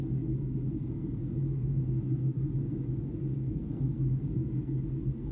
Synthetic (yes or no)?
yes